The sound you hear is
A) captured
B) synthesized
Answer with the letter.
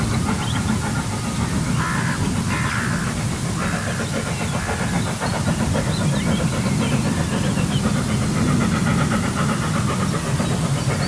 A